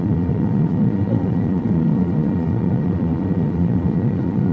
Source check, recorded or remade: remade